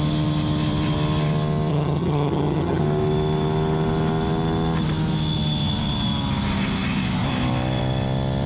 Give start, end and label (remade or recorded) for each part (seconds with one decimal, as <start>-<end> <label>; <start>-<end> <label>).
0.0-1.7 recorded; 1.7-2.8 remade; 2.8-8.5 recorded